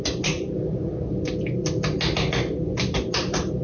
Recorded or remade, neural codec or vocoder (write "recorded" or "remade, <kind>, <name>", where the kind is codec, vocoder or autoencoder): recorded